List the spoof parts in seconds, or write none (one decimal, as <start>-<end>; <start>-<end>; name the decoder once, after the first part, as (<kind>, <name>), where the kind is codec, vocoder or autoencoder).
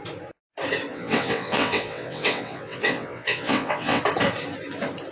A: 0.9-4.0 (vocoder, WaveNeXt)